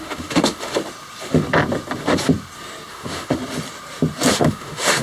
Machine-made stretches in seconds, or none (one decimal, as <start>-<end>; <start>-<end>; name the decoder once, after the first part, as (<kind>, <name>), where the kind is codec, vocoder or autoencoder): 0.0-0.8 (autoencoder, DAC-VAE); 2.9-3.4; 4.3-5.0